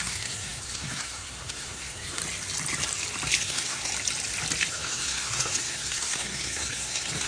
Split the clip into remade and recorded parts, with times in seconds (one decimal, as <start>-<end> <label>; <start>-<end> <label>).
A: 0.0-2.2 remade; 2.2-3.4 recorded; 3.4-3.9 remade; 3.9-4.7 recorded; 4.7-7.3 remade